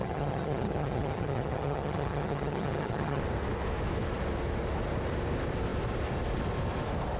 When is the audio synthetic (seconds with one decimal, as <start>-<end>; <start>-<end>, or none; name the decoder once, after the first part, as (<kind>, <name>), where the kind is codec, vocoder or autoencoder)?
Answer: 0.0-3.2 (vocoder, HiFi-GAN)